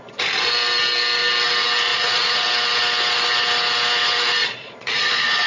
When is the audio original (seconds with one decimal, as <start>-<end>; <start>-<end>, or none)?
0.0-1.9; 2.5-4.4